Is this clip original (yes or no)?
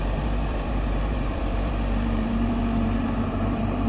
no